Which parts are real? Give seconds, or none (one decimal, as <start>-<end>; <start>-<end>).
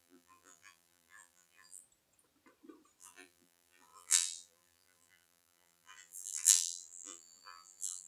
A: 1.8-3.0